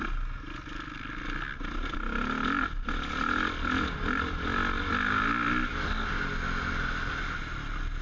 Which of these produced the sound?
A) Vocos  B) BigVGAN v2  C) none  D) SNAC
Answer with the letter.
C